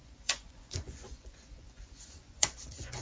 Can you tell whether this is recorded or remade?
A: remade